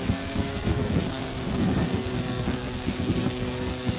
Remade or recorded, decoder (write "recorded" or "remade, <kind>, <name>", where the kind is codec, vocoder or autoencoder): remade, codec, SNAC